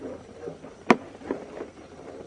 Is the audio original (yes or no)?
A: yes